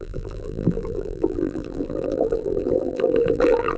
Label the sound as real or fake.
fake